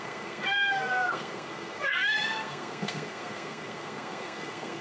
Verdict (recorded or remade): remade